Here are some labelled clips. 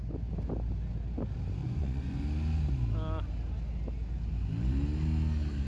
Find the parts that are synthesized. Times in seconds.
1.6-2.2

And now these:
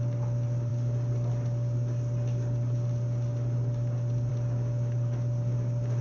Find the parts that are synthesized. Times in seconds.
none

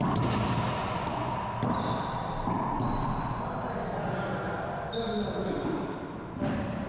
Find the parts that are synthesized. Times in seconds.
0.8-1.3

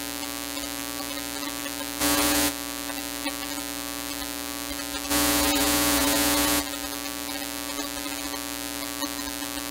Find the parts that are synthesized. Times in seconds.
2.0-2.5; 5.1-6.6

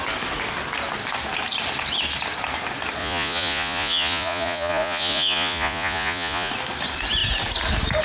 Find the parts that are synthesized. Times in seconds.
3.0-6.5

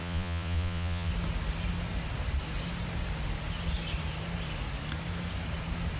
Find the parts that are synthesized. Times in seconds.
0.0-1.1

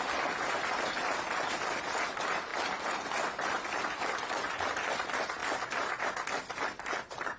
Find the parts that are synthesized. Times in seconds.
none